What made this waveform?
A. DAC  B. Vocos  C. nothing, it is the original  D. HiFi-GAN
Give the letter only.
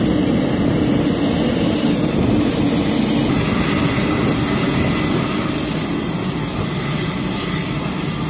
C